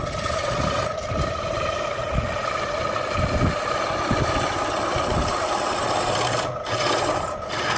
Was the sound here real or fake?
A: real